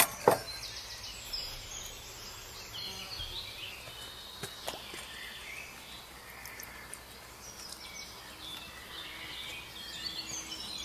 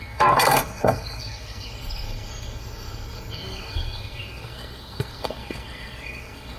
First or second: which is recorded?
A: first